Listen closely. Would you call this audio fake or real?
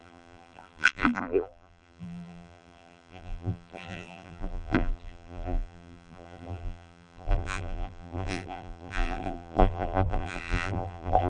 fake